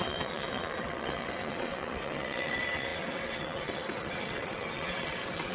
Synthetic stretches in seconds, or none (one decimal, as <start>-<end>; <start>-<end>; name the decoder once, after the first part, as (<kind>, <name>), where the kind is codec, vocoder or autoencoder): 0.0-5.5 (vocoder, WaveNeXt)